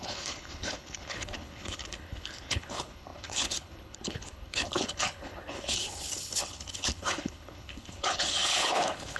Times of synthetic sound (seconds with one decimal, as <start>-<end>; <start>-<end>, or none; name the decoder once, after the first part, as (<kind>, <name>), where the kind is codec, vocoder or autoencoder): 0.0-9.2 (codec, HILCodec)